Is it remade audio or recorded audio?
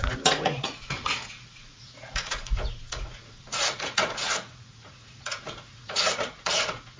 remade